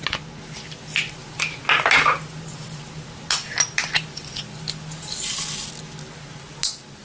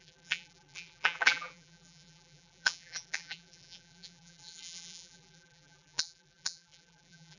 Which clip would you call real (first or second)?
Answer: first